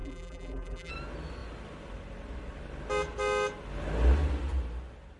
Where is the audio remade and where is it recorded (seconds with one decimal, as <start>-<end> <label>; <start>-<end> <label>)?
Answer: 0.0-0.9 remade; 0.9-5.2 recorded